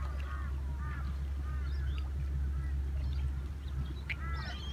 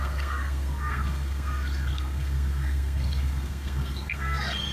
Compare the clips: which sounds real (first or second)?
first